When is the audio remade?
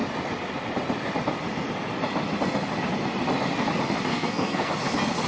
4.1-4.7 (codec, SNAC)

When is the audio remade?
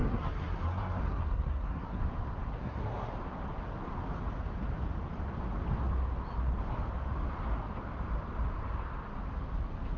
0.0-2.0 (codec, SNAC); 2.6-3.1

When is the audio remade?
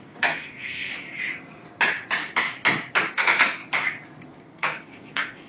0.0-0.9 (codec, SNAC); 3.1-3.6; 4.4-5.5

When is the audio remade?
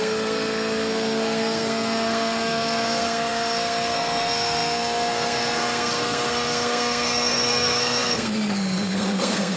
0.0-9.6 (codec, SNAC)